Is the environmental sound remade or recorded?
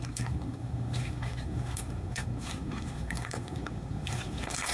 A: remade